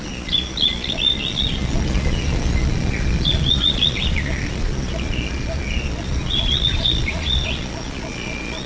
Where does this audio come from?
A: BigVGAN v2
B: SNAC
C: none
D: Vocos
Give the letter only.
D